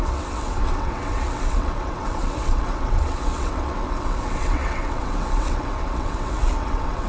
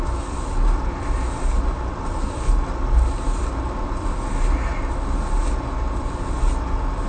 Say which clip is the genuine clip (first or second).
second